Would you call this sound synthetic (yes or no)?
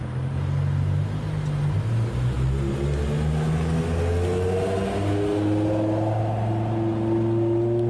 no